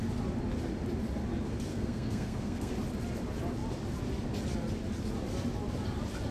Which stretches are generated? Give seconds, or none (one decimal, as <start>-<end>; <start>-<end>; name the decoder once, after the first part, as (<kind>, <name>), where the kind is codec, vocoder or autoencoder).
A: 1.7-2.7 (codec, SNAC)